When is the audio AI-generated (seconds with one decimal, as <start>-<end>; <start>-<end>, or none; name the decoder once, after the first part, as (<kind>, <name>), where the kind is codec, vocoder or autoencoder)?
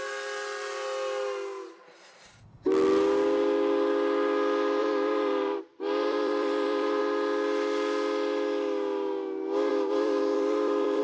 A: 4.8-7.0 (vocoder, BigVGAN v2); 9.7-11.0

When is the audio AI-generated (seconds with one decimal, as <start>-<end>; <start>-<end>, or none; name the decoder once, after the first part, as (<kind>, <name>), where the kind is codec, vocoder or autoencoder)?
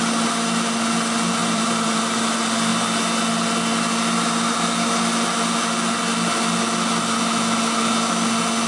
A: 1.4-2.0 (vocoder, BigVGAN v2)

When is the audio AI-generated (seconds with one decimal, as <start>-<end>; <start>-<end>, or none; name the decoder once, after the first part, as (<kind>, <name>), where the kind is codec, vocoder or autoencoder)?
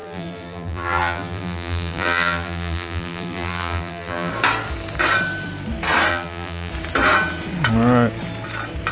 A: 0.0-4.3 (vocoder, BigVGAN v2); 6.1-6.7